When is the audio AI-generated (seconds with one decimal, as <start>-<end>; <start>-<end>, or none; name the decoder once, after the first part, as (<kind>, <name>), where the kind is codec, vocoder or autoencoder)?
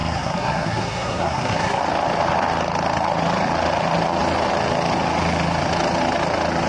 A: 0.0-1.8 (codec, SNAC)